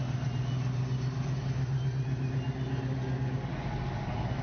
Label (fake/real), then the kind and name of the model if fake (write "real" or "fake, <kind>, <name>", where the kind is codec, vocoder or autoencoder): real